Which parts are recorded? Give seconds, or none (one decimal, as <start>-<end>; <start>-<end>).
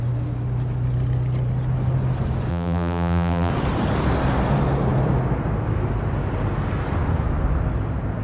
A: 0.0-2.5; 3.5-8.2